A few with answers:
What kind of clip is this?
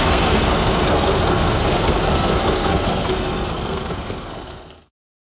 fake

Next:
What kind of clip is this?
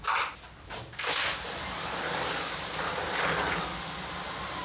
real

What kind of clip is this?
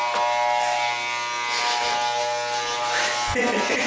real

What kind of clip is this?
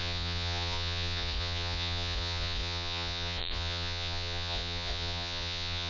fake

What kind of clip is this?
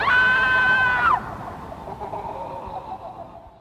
real